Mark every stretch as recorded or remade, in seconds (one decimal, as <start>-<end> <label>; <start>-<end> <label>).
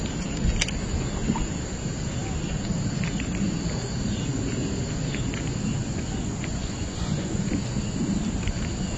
0.0-5.8 recorded; 5.8-7.5 remade; 7.5-9.0 recorded